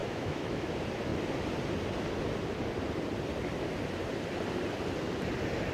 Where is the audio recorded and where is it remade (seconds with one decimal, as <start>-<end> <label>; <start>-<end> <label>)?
0.0-0.7 remade; 0.7-5.7 recorded